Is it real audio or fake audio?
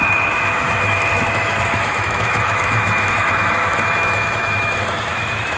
fake